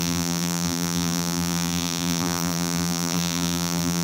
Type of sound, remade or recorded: remade